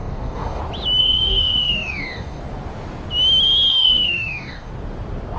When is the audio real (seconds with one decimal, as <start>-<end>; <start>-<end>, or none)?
0.6-1.0; 2.4-3.7; 4.7-5.4